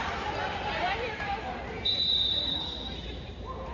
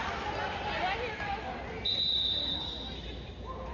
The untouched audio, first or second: second